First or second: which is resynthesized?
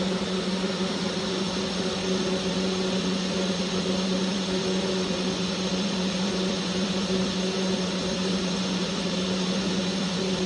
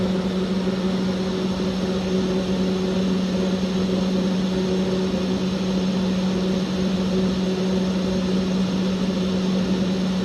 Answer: first